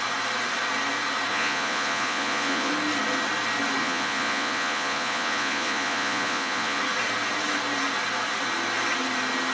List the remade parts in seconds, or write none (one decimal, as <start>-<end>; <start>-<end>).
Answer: 1.3-2.7; 3.8-6.8